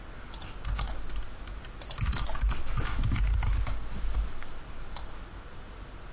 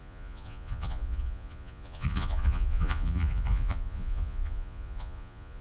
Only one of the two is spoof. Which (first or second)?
second